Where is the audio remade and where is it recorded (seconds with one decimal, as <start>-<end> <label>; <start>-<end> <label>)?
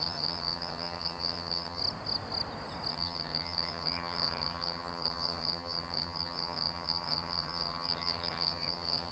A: 0.0-1.8 remade; 1.8-2.9 recorded; 2.9-9.1 remade